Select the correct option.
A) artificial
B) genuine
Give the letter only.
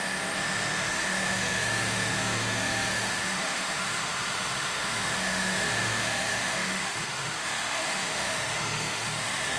A